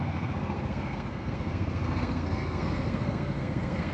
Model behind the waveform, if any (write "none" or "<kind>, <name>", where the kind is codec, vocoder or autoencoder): codec, SNAC